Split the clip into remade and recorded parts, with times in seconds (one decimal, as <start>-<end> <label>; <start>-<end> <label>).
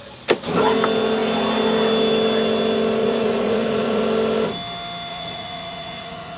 0.0-3.0 recorded; 3.0-4.0 remade; 4.0-5.1 recorded; 5.1-6.4 remade